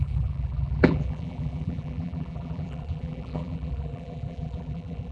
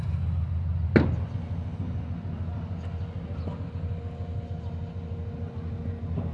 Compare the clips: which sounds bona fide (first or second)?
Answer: second